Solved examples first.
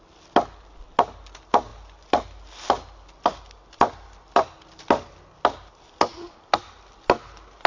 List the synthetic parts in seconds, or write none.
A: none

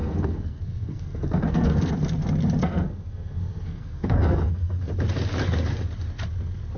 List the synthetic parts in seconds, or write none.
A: 0.0-1.9 (codec, SNAC); 2.6-4.9

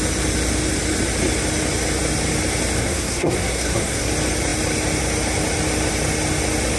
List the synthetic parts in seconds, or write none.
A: 2.8-4.1 (codec, SNAC)

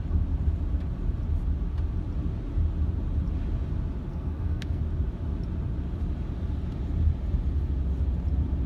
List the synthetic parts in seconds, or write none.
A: 4.1-4.8 (codec, SNAC)